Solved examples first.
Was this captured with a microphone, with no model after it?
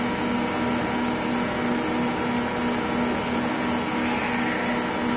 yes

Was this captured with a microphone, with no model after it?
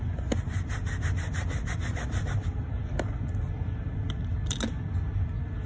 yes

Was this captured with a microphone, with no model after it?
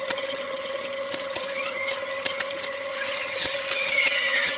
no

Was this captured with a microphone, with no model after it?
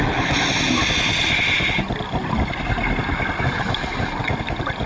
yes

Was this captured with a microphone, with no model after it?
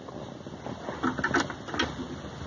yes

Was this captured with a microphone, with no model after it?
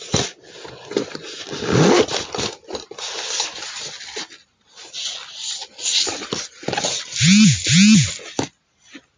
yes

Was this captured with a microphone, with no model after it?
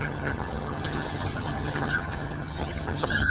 no